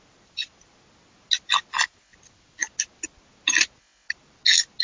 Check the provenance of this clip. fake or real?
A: real